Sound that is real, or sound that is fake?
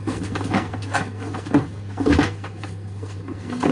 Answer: fake